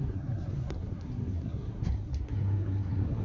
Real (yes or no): no